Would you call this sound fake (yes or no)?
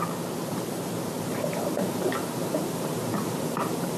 yes